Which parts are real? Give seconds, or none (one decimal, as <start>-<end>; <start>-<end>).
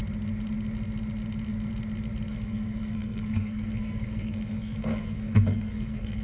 0.0-2.3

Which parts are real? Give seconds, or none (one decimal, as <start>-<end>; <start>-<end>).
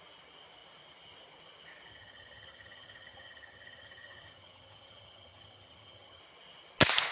0.0-1.9; 6.2-7.1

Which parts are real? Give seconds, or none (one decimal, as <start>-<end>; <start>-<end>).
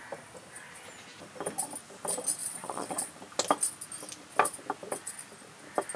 0.0-2.4; 3.1-6.0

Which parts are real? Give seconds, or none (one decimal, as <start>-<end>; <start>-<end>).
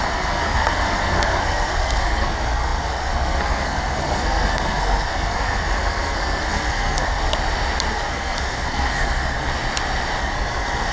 7.2-7.9; 9.5-10.2